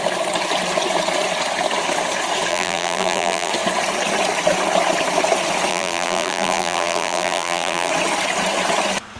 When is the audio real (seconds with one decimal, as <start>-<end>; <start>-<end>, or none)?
0.0-2.5; 3.5-5.7; 7.9-9.2

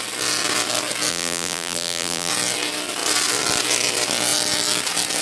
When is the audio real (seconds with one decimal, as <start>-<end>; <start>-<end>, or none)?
0.0-1.1; 2.3-5.2

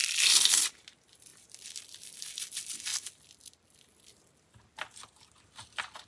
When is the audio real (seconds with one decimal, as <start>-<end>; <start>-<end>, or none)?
0.7-1.3; 2.2-2.9; 5.4-6.1

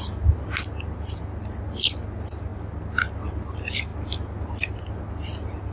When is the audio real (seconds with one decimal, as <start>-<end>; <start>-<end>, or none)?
0.0-5.7

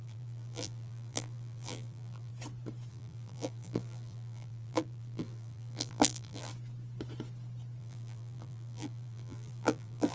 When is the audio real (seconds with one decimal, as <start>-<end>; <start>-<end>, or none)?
2.3-2.9; 6.5-7.8

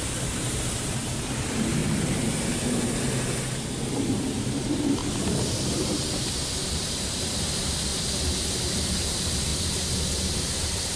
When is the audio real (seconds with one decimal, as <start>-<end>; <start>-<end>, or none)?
1.8-3.9; 5.0-5.7; 7.9-8.5; 9.5-10.4